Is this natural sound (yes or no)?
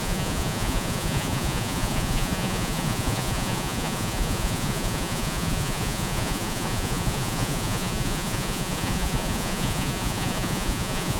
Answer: no